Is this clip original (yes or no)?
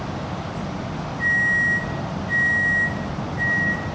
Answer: yes